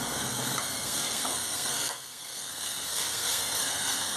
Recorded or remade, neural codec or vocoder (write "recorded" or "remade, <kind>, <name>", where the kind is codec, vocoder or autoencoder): remade, codec, SNAC